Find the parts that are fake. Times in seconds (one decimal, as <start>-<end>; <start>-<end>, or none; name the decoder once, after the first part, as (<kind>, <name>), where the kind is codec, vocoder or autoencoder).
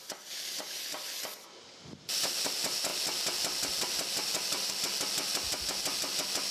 none